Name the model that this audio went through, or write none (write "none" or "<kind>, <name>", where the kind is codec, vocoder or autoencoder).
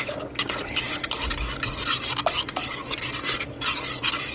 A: none